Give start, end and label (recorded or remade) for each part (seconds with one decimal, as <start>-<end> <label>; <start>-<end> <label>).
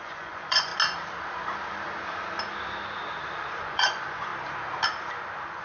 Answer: 0.0-0.7 remade; 0.7-3.6 recorded; 3.6-4.3 remade; 4.3-5.6 recorded